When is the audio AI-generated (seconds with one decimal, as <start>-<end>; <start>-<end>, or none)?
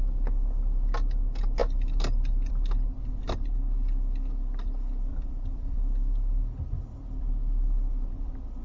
5.1-7.3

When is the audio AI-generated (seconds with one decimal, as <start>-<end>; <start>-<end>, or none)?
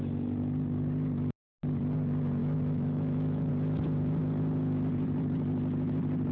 2.4-3.5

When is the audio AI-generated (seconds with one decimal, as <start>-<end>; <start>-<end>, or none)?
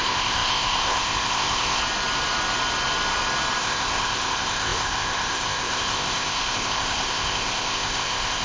0.0-1.8; 3.6-8.4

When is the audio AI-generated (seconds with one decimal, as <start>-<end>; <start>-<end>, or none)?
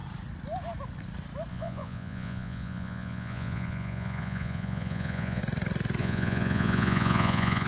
1.5-5.4; 6.0-7.7